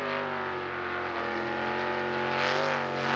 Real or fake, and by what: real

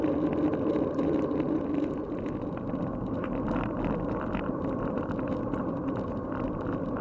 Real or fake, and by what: fake, vocoder, BigVGAN v2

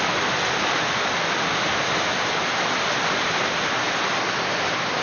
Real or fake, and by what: real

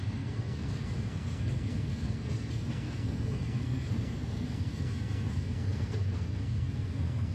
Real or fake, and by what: fake, codec, SNAC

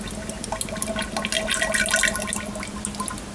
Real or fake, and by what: real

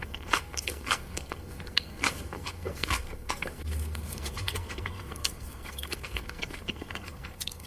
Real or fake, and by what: fake, codec, SNAC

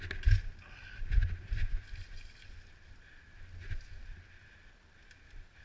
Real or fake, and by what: real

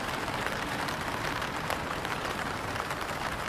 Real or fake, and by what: fake, vocoder, BigVGAN v2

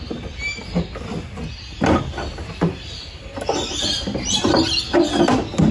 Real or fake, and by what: real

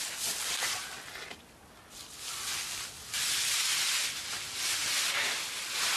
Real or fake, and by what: real